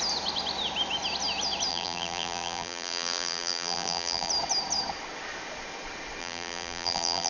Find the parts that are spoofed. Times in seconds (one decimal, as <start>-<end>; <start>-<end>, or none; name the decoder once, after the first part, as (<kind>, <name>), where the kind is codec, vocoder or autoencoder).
1.7-4.3 (vocoder, BigVGAN v2); 6.2-7.3